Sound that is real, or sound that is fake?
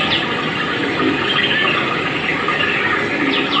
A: real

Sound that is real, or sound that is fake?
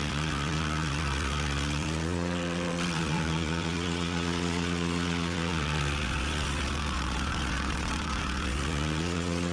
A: fake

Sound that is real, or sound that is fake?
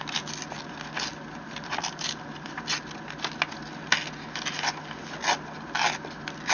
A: real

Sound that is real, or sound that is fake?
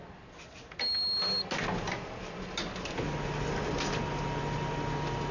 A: real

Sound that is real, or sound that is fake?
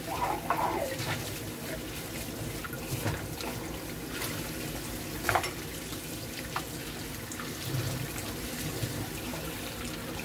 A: real